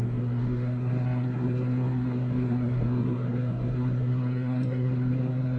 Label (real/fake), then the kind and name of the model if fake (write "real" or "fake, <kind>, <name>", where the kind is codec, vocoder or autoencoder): fake, codec, SNAC